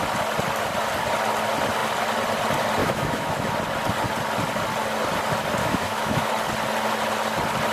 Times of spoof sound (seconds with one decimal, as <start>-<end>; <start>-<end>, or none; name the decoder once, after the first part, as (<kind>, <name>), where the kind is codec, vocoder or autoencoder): 2.8-3.5 (autoencoder, DAC-VAE); 5.6-6.3

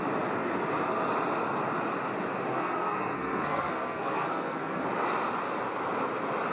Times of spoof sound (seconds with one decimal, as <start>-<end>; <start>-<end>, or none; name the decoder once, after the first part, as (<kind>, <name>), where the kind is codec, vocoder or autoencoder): 2.5-4.8 (codec, SNAC)

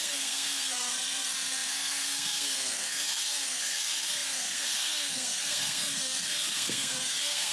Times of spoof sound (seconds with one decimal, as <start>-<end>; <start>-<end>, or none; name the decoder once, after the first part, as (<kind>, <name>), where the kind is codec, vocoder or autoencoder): 0.0-7.5 (codec, SNAC)

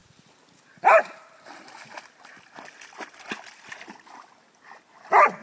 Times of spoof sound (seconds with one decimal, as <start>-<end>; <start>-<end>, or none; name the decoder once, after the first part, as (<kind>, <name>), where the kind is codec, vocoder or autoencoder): none

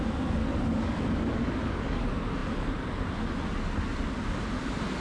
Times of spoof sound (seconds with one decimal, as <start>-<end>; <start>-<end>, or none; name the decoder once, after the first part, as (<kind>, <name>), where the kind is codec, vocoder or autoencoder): 0.4-2.0 (codec, DAC)

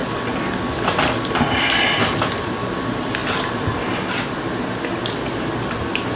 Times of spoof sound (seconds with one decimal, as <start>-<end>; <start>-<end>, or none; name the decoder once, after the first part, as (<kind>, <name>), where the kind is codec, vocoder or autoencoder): none

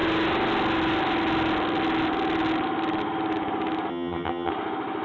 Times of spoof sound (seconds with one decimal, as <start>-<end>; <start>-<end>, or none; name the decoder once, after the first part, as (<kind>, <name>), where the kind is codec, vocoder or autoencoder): 3.9-4.5 (vocoder, HiFi-GAN)